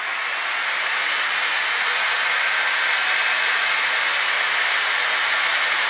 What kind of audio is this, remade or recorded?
recorded